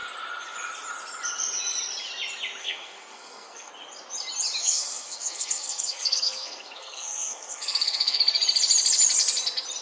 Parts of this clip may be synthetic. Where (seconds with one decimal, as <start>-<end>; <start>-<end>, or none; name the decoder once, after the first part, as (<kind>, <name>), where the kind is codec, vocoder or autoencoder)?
2.6-3.7 (codec, SNAC); 4.6-8.2